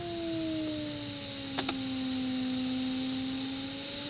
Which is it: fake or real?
real